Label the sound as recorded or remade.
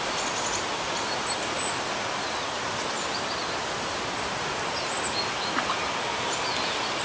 recorded